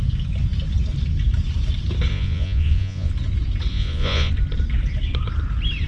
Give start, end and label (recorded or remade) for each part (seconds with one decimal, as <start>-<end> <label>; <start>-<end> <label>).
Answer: 0.0-2.1 recorded; 2.1-3.1 remade; 3.1-3.7 recorded; 3.7-4.3 remade; 4.3-5.9 recorded